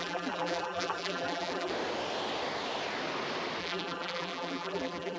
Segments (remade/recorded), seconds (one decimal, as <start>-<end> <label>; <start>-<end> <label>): 0.0-1.7 remade; 1.7-3.6 recorded; 3.6-5.2 remade

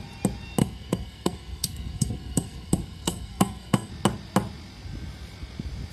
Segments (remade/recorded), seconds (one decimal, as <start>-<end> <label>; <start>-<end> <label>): 0.0-0.6 recorded; 0.6-3.9 remade; 3.9-5.9 recorded

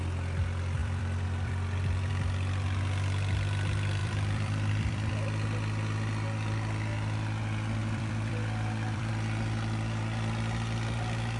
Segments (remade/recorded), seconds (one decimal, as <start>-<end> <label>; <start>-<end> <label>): 0.0-0.8 recorded; 0.8-2.1 remade; 2.1-4.0 recorded; 4.0-5.1 remade; 5.1-7.8 recorded; 7.8-9.1 remade; 9.1-11.4 recorded

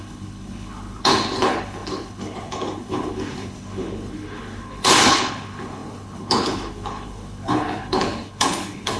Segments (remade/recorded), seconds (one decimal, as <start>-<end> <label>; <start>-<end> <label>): 0.0-9.0 remade

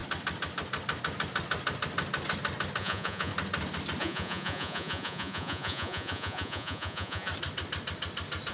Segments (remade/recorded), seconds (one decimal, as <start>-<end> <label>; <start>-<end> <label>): 0.0-2.8 recorded; 2.8-3.3 remade; 3.3-4.0 recorded; 4.0-7.3 remade; 7.3-8.5 recorded

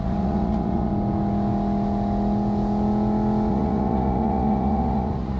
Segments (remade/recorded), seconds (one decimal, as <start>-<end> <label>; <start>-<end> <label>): 0.0-0.9 remade; 0.9-3.5 recorded; 3.5-5.4 remade

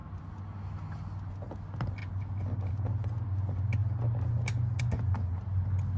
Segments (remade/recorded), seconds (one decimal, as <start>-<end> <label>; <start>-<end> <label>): 0.0-6.0 recorded